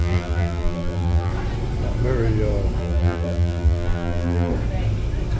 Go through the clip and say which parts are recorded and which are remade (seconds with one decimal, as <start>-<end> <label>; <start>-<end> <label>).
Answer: 0.0-1.3 remade; 1.3-2.8 recorded; 2.8-4.5 remade; 4.5-5.4 recorded